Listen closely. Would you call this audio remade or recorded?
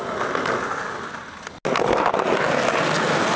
recorded